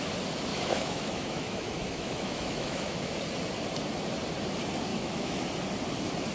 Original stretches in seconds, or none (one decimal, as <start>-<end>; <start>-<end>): 0.0-0.5; 3.1-4.9; 5.5-6.3